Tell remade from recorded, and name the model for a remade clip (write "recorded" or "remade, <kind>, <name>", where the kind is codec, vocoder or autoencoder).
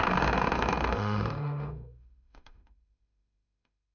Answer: remade, autoencoder, DAC-VAE